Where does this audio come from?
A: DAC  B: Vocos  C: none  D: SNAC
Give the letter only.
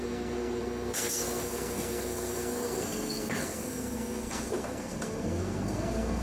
D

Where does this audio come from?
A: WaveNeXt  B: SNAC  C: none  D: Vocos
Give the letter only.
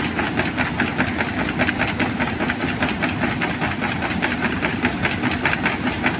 C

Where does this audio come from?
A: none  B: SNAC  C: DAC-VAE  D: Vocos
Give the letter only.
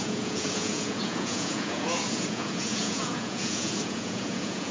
D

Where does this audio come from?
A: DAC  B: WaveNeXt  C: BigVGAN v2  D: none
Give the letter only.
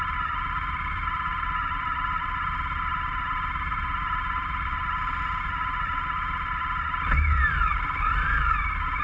C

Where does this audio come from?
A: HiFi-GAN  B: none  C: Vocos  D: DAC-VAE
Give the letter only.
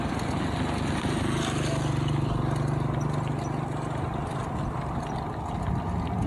B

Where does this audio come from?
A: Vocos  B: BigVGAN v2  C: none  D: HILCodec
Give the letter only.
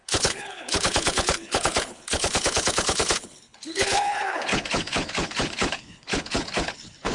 D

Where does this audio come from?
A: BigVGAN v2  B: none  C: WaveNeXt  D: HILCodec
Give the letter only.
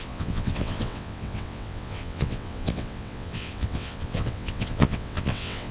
C